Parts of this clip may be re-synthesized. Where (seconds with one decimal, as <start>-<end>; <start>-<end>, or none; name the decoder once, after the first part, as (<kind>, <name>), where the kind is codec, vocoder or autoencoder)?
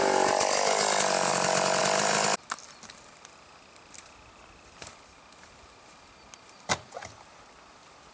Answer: none